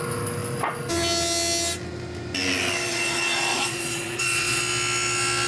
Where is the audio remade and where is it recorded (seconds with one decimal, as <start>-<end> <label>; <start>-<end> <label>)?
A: 0.0-2.9 recorded; 2.9-4.6 remade; 4.6-5.5 recorded